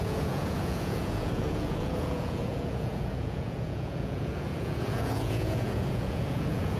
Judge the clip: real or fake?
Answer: fake